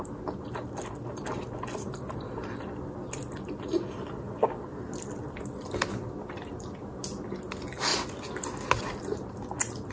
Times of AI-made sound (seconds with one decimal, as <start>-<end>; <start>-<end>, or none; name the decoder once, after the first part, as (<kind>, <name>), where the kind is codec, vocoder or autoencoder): none